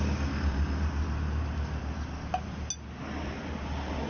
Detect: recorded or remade recorded